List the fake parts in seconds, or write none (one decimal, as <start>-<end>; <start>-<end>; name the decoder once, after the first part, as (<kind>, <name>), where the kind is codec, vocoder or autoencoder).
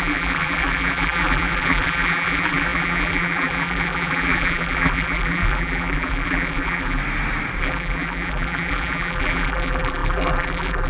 0.0-7.0 (vocoder, BigVGAN v2); 7.6-10.9